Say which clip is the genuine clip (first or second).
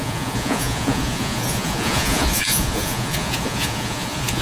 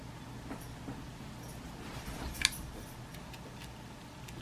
second